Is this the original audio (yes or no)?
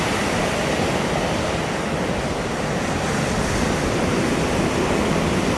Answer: yes